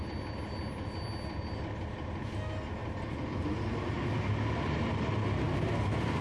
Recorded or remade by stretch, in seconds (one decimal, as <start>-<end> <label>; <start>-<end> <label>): 0.0-6.2 recorded